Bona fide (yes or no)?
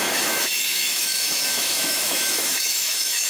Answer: no